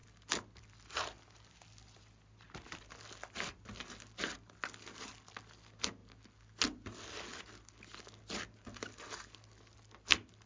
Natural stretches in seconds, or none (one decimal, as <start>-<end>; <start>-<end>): 0.0-10.5